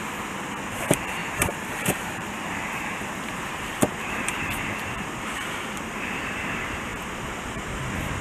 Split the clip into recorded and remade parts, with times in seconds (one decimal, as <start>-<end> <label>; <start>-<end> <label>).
0.0-1.2 recorded; 1.2-3.8 remade; 3.8-8.2 recorded